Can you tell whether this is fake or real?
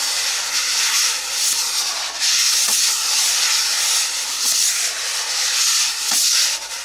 real